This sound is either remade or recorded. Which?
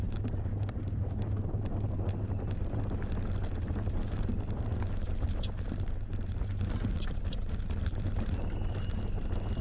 recorded